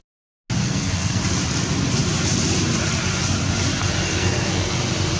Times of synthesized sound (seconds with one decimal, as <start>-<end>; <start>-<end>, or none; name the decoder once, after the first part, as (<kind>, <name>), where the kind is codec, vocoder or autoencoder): 0.6-1.2 (codec, SNAC); 4.1-4.7